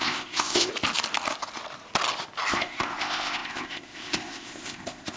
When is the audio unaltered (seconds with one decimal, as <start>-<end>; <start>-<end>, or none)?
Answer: 0.7-2.5